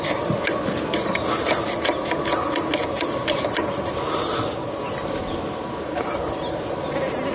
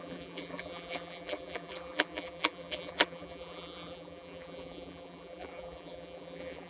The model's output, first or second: second